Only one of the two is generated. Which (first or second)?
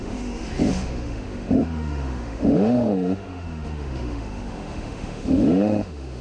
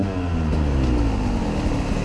first